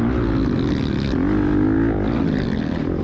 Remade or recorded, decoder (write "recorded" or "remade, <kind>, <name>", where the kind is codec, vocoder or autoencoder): recorded